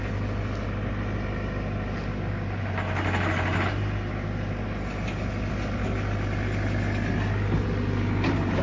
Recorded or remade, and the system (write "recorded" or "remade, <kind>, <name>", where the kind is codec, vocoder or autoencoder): recorded